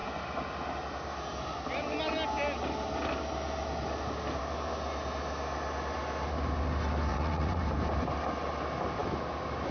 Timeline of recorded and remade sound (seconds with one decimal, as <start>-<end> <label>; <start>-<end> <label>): 0.0-7.1 recorded; 7.1-7.6 remade; 7.6-9.7 recorded